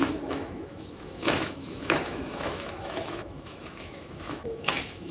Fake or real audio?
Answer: fake